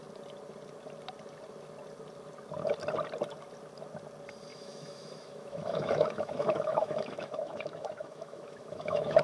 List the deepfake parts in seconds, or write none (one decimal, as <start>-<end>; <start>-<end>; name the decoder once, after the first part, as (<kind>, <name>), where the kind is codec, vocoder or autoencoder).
4.5-9.2 (autoencoder, DAC-VAE)